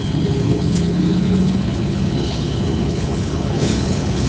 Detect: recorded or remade remade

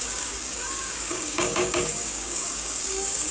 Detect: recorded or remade remade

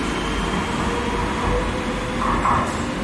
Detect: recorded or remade recorded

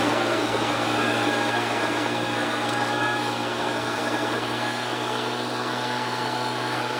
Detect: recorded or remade remade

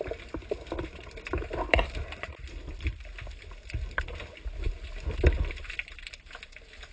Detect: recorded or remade recorded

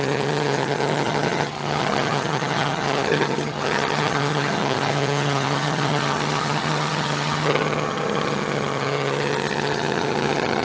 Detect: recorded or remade remade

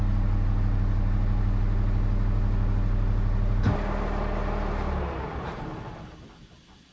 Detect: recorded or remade recorded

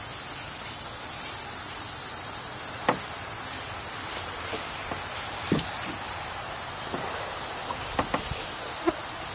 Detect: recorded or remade recorded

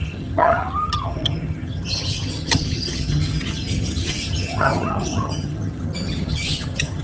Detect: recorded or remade remade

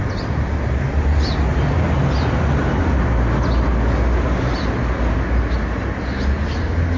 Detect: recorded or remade recorded